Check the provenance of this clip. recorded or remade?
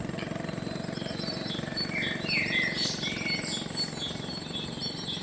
recorded